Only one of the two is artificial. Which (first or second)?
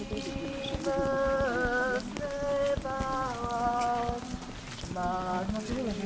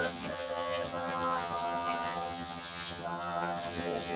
second